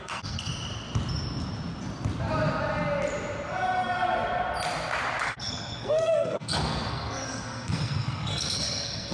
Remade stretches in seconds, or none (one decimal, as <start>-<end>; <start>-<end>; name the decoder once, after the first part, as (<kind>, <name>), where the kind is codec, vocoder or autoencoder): 0.0-0.5 (codec, SNAC); 5.2-9.1